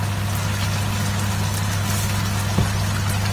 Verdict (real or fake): real